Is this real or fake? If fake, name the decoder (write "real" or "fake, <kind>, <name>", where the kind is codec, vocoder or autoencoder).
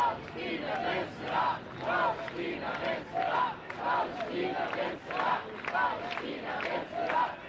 real